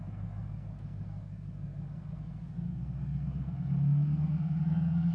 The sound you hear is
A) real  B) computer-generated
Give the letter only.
B